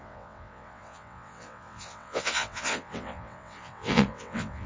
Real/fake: fake